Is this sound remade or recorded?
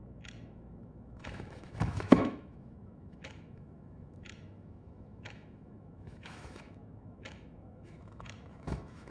remade